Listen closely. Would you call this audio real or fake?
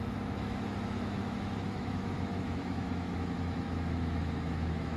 fake